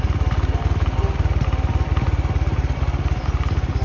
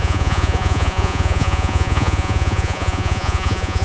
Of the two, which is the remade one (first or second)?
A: second